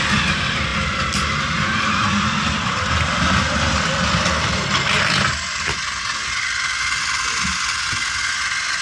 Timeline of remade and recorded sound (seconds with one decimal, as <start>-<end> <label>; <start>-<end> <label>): 0.0-8.8 recorded